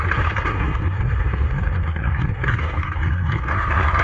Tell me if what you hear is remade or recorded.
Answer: remade